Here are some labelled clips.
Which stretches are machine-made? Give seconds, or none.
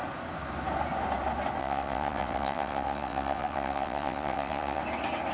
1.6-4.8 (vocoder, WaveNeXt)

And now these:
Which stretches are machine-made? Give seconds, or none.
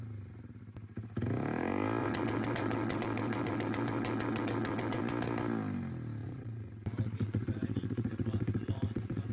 2.0-5.0 (vocoder, WaveNeXt); 6.2-9.3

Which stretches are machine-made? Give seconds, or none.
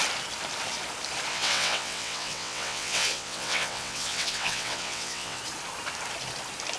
1.3-5.4 (vocoder, WaveNeXt)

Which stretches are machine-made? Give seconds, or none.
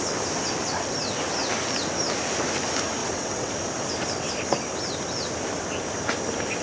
3.0-3.5 (vocoder, WaveNeXt)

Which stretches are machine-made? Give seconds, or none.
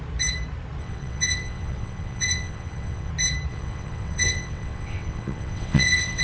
0.8-3.1 (vocoder, WaveNeXt); 3.5-6.2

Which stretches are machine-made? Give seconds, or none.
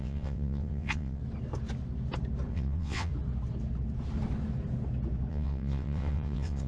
0.0-1.2 (vocoder, WaveNeXt); 2.5-3.1; 5.3-6.7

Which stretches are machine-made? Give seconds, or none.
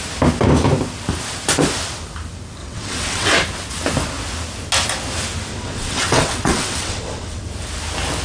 2.6-3.3 (vocoder, WaveNeXt); 5.5-7.5